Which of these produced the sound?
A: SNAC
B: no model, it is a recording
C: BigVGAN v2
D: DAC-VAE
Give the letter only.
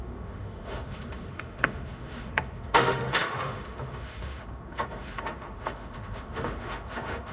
D